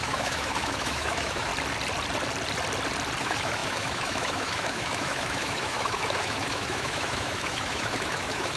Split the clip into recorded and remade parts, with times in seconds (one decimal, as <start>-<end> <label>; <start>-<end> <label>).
0.0-1.5 remade; 1.5-3.2 recorded; 3.2-8.6 remade